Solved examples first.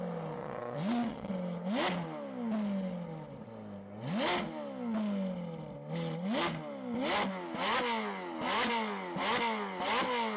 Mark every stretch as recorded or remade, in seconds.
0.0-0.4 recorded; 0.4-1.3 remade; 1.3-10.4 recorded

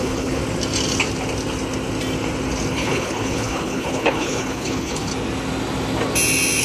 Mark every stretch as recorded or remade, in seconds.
0.0-0.4 remade; 0.4-2.7 recorded; 2.7-5.1 remade; 5.1-6.6 recorded

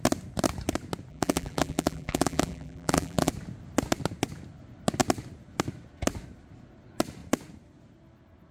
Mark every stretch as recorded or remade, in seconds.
0.0-1.1 recorded; 1.1-3.3 remade; 3.3-8.5 recorded